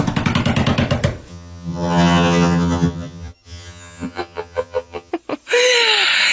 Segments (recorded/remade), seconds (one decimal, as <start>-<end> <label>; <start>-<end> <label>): 0.0-1.3 recorded; 1.3-5.1 remade; 5.1-6.3 recorded